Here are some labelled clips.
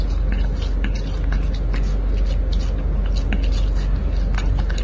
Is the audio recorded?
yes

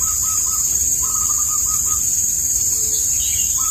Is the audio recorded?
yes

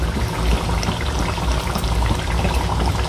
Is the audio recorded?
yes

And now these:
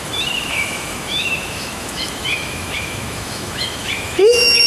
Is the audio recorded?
no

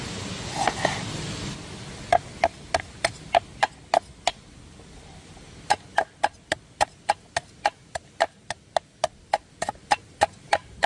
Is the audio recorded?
yes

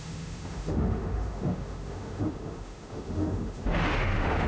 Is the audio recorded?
no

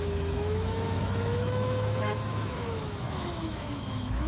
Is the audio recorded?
no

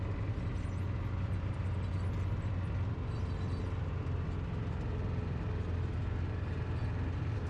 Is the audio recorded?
yes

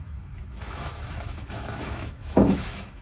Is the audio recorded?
no